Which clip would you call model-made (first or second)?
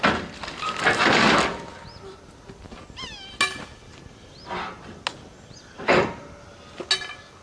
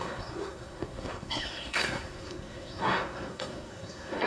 second